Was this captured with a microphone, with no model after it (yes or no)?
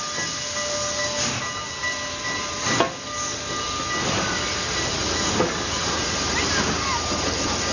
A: yes